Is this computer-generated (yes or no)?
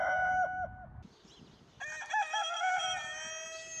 no